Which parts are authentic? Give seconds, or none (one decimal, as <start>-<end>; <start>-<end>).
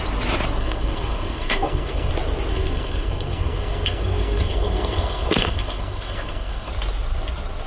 0.0-0.6; 2.1-2.5; 6.7-7.7